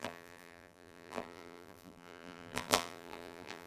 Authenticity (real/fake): fake